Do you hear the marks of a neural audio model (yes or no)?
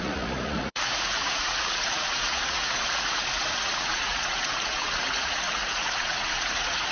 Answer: yes